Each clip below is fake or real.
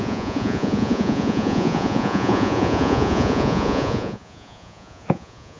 fake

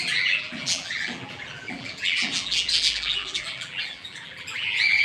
fake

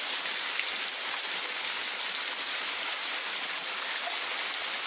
real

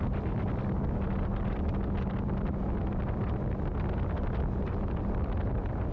real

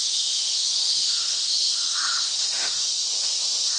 fake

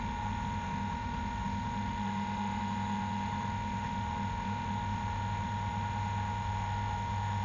fake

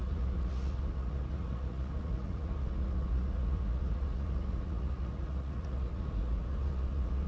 fake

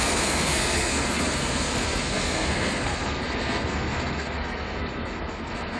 fake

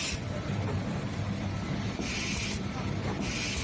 real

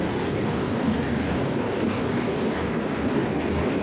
fake